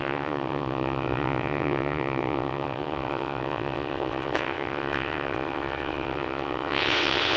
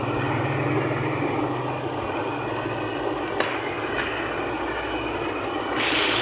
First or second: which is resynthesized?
first